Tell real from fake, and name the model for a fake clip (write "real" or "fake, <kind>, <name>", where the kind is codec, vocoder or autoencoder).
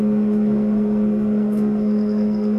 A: fake, codec, SNAC